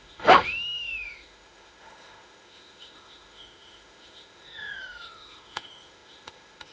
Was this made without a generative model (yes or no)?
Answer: no